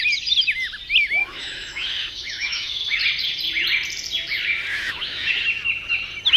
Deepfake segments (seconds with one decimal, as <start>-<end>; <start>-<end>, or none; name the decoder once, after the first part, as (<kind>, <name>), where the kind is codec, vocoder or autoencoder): 1.2-3.0 (autoencoder, DAC-VAE); 4.7-5.3